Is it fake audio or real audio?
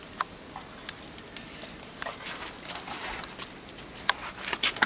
real